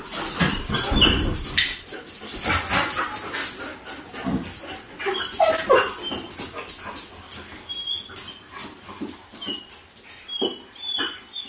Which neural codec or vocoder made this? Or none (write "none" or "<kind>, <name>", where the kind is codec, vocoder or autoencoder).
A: none